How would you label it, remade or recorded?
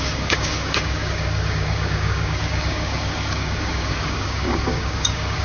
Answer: remade